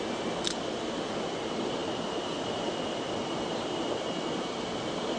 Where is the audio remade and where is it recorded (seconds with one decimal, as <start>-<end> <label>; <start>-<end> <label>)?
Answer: 0.0-5.2 recorded